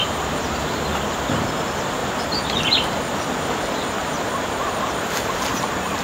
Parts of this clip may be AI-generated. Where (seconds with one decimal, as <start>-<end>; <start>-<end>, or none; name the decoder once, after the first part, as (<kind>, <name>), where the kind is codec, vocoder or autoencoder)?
0.0-0.7 (vocoder, BigVGAN v2); 4.0-5.6